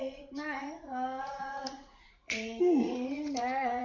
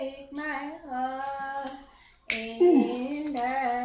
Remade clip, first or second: first